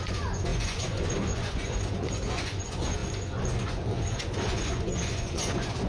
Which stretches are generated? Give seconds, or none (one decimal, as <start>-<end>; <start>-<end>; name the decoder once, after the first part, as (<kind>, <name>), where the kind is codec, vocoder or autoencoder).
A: 0.0-5.9 (vocoder, Vocos)